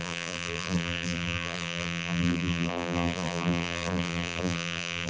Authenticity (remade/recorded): remade